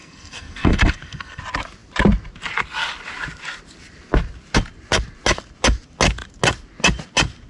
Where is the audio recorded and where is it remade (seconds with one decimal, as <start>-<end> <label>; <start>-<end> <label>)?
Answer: 0.0-1.4 remade; 1.4-7.5 recorded